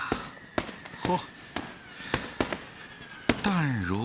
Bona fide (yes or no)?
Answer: yes